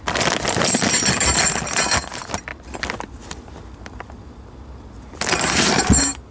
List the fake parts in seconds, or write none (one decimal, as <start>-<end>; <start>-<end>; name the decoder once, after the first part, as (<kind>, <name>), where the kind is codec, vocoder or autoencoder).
none